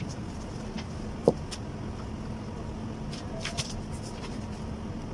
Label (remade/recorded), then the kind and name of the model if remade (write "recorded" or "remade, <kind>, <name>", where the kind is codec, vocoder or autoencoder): remade, vocoder, BigVGAN v2